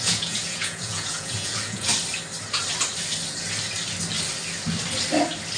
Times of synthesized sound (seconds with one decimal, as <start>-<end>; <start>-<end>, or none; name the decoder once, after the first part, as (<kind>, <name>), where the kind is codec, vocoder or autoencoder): 0.0-1.9 (vocoder, Vocos)